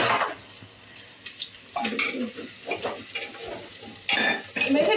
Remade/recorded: recorded